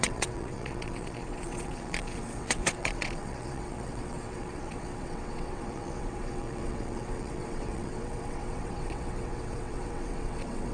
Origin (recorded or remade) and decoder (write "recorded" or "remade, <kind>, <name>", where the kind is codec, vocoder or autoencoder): remade, vocoder, WaveNeXt